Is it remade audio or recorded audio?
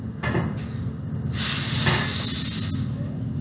recorded